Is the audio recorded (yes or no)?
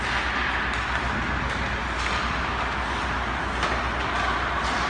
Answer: yes